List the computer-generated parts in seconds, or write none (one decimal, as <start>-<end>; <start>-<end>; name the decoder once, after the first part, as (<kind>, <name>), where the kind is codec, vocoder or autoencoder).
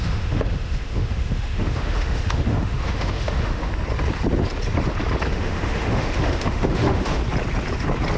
0.0-3.7 (autoencoder, DAC-VAE); 5.3-7.2